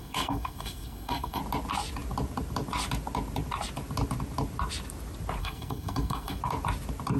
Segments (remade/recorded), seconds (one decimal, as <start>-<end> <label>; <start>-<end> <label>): 0.0-1.4 remade; 1.4-5.4 recorded; 5.4-6.4 remade; 6.4-7.2 recorded